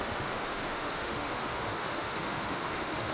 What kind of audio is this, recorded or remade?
remade